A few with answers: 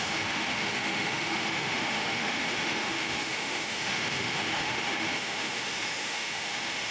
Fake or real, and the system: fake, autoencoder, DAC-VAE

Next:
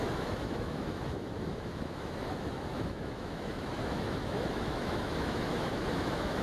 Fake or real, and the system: fake, autoencoder, DAC-VAE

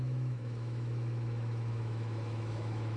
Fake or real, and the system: fake, autoencoder, DAC-VAE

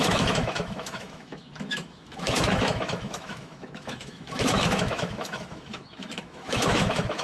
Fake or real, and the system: fake, autoencoder, DAC-VAE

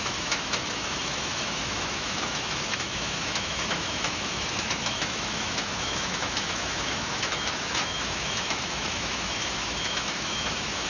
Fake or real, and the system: fake, autoencoder, DAC-VAE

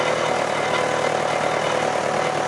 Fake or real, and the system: real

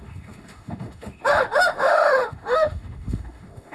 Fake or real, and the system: fake, autoencoder, DAC-VAE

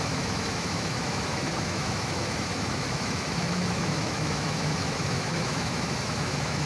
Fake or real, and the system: fake, autoencoder, DAC-VAE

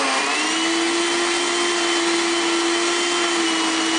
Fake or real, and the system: real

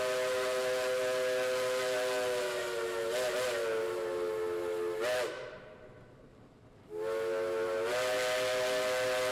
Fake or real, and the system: real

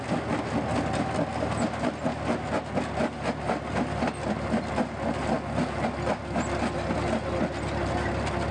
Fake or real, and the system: real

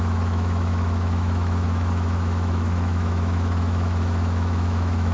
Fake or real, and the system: fake, autoencoder, DAC-VAE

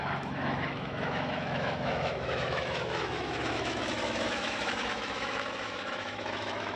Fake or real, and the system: fake, autoencoder, DAC-VAE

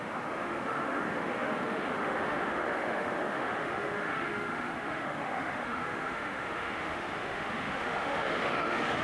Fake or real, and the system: fake, autoencoder, DAC-VAE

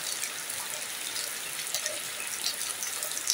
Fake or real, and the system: real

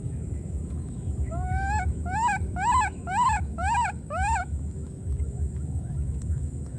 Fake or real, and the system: fake, autoencoder, DAC-VAE